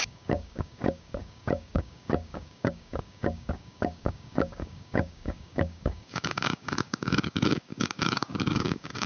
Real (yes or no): no